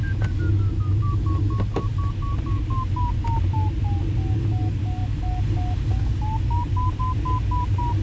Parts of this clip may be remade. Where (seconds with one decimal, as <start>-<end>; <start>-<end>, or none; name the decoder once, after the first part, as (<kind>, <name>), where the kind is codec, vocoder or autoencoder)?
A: none